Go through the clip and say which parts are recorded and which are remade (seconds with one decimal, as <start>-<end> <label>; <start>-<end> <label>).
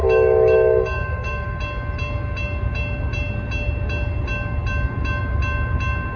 0.0-1.6 remade; 1.6-6.2 recorded